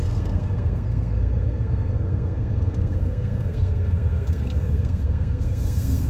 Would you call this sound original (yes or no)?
no